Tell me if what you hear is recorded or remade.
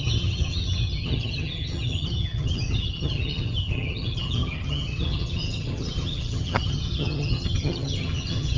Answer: remade